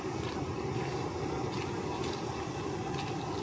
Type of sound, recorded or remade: recorded